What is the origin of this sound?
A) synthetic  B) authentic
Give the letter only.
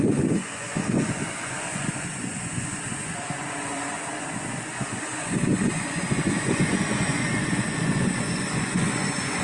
A